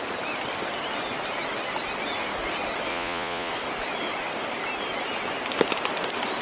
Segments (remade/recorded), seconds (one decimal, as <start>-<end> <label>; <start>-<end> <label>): 0.0-2.9 recorded; 2.9-3.5 remade; 3.5-6.4 recorded